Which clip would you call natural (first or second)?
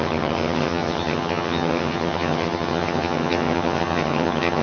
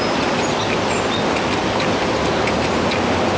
second